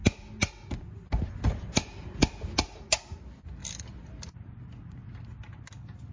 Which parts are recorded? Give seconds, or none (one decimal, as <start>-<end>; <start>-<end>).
0.0-6.1